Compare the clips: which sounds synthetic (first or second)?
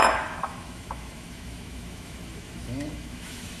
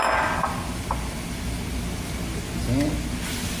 first